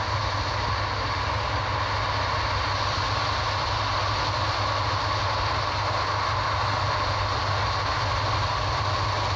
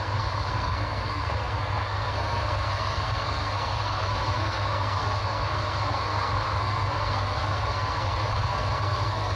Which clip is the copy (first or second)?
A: second